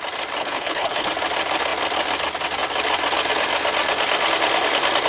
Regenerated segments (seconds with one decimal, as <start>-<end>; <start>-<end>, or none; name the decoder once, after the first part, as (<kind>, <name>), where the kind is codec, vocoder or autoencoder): 0.4-1.1 (codec, HILCodec)